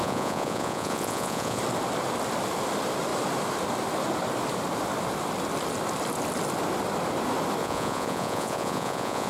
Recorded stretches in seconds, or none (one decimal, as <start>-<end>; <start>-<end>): 1.6-7.6